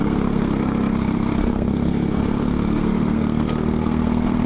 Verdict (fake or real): fake